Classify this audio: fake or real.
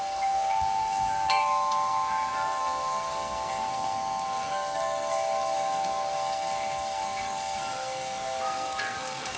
fake